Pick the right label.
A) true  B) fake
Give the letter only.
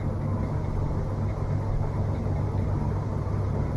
A